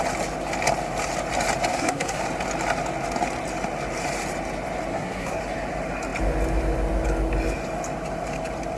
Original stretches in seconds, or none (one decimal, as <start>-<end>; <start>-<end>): 0.0-1.7; 2.2-4.9; 5.4-8.8